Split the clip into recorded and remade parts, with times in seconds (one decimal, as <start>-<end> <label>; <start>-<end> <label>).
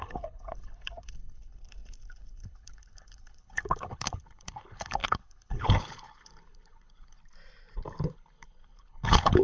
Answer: 0.0-7.2 remade; 7.2-8.0 recorded; 8.0-9.4 remade